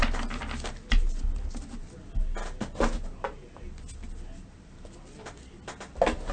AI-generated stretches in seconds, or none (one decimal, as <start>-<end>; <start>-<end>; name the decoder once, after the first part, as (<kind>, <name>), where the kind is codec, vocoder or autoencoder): none